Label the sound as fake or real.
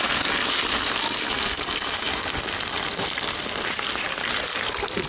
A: fake